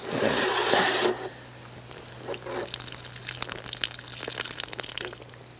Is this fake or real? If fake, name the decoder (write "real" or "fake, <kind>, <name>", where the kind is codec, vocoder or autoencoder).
real